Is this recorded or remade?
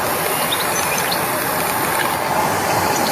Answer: recorded